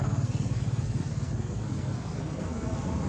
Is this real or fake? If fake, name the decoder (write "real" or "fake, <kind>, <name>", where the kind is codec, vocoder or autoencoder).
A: fake, codec, SNAC